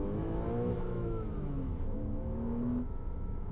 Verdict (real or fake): fake